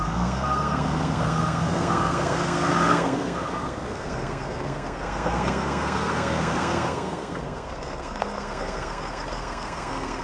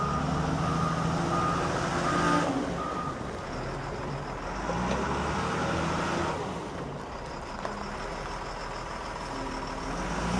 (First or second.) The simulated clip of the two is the first